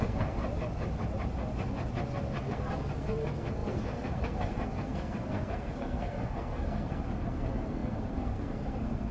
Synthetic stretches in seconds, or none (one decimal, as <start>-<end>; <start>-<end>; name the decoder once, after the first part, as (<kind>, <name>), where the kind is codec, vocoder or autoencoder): 0.0-0.4 (codec, SNAC); 2.4-9.1